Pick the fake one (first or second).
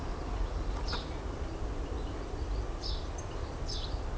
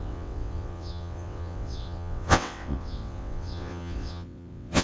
second